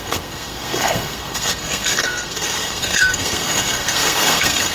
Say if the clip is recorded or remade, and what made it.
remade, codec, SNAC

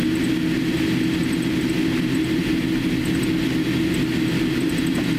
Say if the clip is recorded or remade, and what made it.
recorded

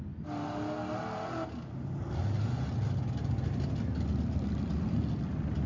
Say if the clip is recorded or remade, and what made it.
recorded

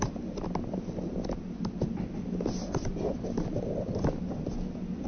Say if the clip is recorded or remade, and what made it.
recorded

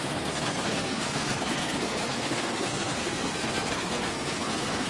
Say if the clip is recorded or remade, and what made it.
remade, codec, SNAC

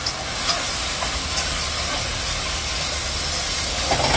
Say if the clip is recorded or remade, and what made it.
recorded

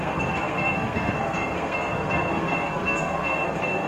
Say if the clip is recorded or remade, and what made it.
remade, codec, SNAC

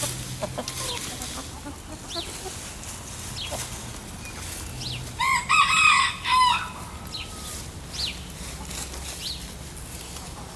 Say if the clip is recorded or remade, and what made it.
recorded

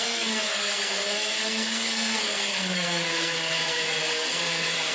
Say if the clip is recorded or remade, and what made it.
remade, codec, SNAC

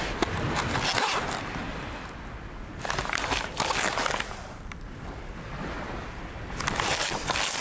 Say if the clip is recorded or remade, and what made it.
recorded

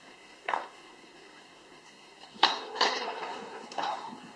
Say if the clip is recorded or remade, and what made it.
remade, codec, SNAC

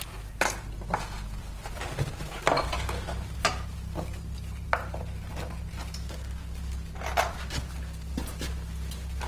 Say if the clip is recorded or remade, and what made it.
recorded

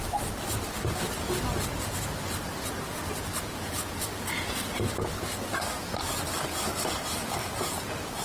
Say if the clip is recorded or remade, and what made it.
recorded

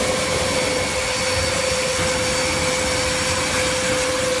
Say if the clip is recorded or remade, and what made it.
recorded